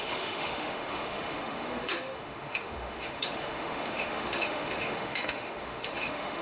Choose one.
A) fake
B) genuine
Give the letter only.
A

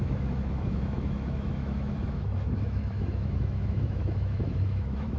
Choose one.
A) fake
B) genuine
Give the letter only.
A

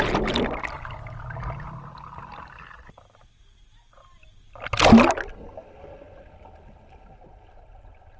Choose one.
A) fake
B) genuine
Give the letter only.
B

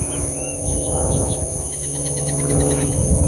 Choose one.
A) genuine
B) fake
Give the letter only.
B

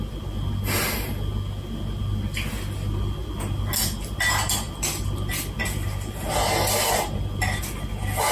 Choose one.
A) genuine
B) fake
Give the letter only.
A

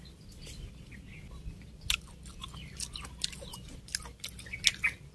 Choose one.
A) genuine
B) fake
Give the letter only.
A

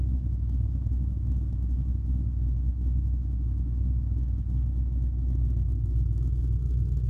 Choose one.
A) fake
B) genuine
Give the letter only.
A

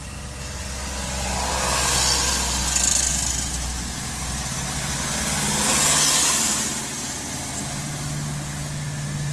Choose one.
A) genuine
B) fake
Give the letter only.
A